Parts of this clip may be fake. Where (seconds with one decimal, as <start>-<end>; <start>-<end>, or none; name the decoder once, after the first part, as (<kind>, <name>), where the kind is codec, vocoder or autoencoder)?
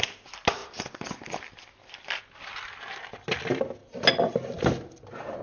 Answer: 0.6-2.2 (vocoder, BigVGAN v2); 3.8-5.4